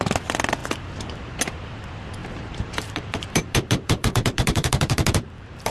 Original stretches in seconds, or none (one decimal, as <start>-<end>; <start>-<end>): 0.0-2.2